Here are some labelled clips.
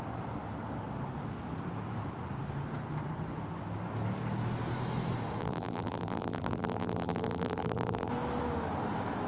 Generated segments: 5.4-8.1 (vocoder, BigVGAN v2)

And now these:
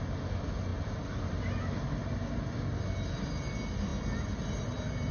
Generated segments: none

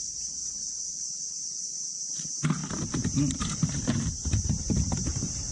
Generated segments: 0.0-2.6 (vocoder, BigVGAN v2); 4.4-5.5

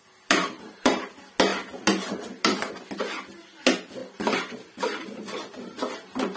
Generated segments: 0.4-1.1 (vocoder, BigVGAN v2)

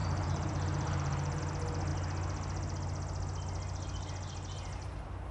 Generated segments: 0.0-1.4 (vocoder, BigVGAN v2)

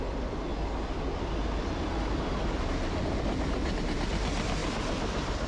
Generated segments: 4.6-5.5 (vocoder, BigVGAN v2)

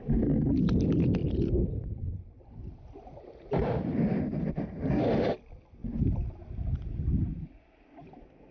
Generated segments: 1.2-4.4 (vocoder, BigVGAN v2)

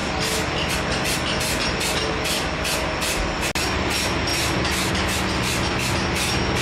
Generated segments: 0.0-0.7 (vocoder, BigVGAN v2); 4.3-4.9